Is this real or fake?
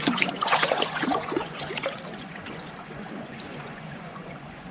fake